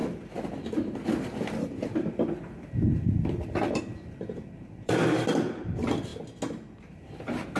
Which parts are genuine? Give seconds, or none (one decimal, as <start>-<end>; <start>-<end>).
6.1-6.8